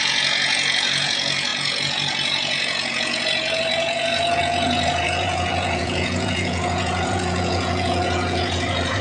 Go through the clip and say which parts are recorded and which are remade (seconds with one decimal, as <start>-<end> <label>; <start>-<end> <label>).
0.0-9.0 remade